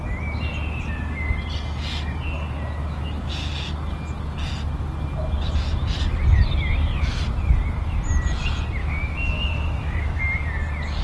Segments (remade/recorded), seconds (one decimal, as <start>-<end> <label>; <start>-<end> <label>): 0.0-2.8 recorded; 2.8-3.3 remade; 3.3-8.8 recorded; 8.8-10.2 remade; 10.2-11.0 recorded